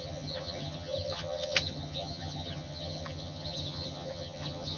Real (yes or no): no